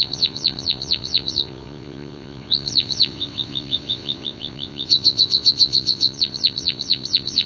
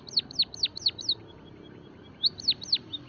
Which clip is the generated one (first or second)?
first